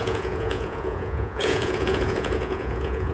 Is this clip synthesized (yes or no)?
yes